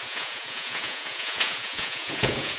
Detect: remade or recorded remade